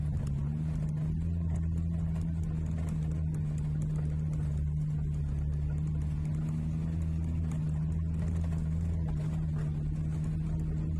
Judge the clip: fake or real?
real